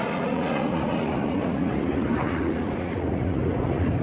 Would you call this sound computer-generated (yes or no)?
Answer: yes